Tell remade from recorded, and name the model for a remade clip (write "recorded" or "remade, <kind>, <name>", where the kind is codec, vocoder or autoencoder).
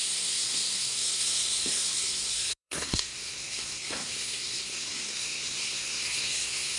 remade, codec, SNAC